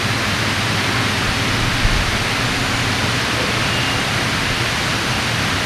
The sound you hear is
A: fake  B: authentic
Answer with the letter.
B